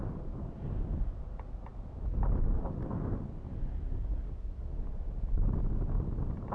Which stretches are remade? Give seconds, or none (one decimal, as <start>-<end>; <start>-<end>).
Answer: none